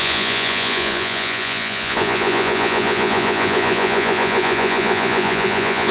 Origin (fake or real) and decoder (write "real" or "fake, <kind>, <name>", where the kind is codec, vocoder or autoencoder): fake, vocoder, Vocos